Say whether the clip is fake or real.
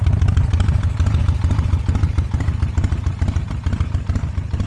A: fake